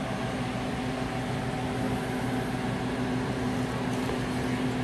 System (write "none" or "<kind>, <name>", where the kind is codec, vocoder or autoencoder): none